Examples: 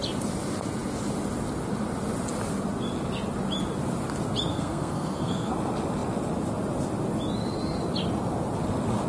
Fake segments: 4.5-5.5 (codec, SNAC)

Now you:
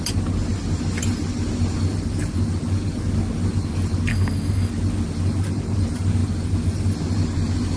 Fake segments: 4.1-4.7 (codec, SNAC)

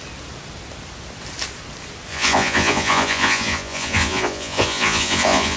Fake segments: 2.1-5.6 (vocoder, Vocos)

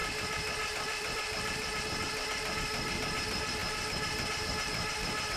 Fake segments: 0.0-1.8 (vocoder, BigVGAN v2); 3.6-4.3

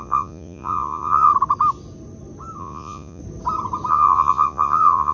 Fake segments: 0.0-1.3 (vocoder, Vocos); 2.6-3.2; 3.9-5.1

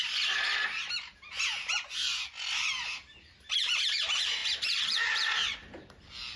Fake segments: none